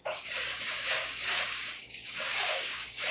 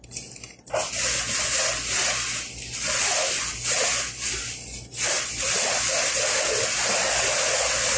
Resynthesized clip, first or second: first